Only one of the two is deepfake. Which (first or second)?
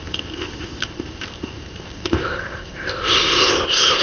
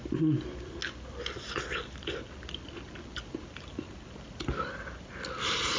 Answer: first